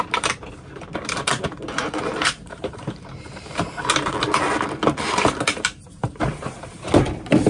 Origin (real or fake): fake